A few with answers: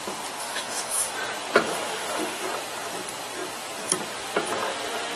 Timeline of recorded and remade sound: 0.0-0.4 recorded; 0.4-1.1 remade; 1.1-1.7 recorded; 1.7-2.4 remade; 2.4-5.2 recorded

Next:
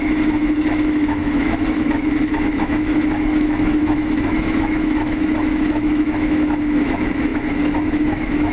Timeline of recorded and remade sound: 0.0-8.5 remade

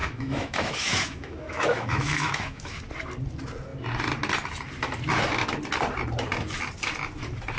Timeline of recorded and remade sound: 0.0-2.8 remade; 2.8-7.6 recorded

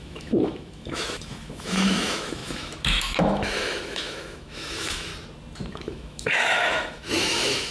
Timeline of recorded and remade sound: 0.0-5.1 remade; 5.1-5.7 recorded; 5.7-7.7 remade